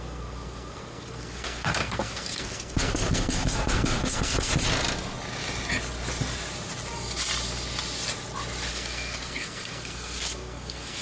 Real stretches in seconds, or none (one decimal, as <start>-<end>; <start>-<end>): 4.5-8.7